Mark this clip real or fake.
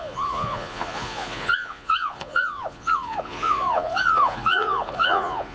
fake